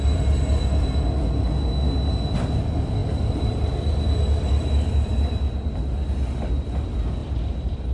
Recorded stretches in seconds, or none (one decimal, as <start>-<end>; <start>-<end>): 1.1-3.0; 5.7-7.2

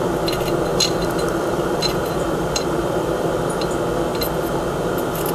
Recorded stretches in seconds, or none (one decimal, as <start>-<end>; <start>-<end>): 0.0-0.7; 3.3-5.3